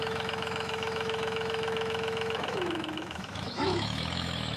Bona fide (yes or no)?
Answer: no